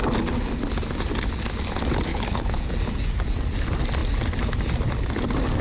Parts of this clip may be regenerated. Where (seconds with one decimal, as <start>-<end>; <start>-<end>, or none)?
2.1-2.6